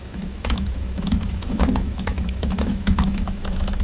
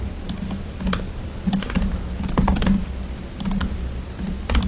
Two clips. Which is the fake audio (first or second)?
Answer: first